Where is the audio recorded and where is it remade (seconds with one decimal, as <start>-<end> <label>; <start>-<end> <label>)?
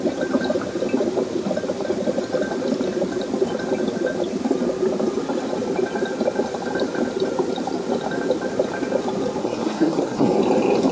0.0-9.4 recorded; 9.4-10.4 remade; 10.4-10.9 recorded